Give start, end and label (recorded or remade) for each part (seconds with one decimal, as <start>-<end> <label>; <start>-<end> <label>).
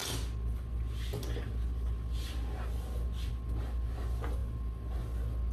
0.0-5.5 recorded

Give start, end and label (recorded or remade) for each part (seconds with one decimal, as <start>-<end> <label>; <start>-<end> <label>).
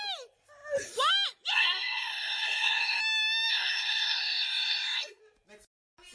0.0-1.5 recorded; 1.5-3.0 remade; 3.0-3.5 recorded; 3.5-5.2 remade; 5.2-6.1 recorded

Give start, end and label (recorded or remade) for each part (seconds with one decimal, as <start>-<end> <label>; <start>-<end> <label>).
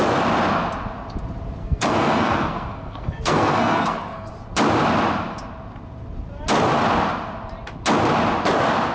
0.0-1.6 recorded; 1.6-4.3 remade; 4.3-8.9 recorded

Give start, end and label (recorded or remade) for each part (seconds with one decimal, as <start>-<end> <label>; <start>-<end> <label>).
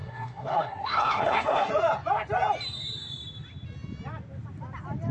0.0-1.7 remade; 1.7-5.1 recorded